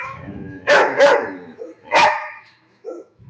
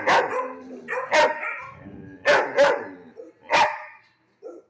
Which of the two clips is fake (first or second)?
first